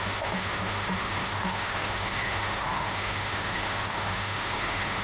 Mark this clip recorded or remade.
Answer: remade